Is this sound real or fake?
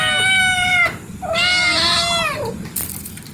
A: real